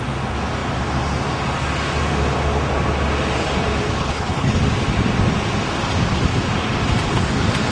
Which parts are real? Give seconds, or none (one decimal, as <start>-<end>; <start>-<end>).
0.0-4.0; 4.6-7.7